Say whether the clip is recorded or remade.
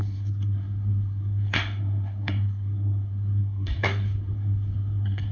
remade